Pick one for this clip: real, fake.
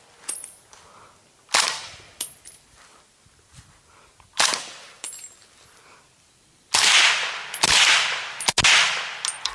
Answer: real